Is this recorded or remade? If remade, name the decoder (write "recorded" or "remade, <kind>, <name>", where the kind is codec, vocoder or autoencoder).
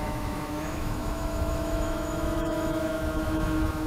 remade, autoencoder, DAC-VAE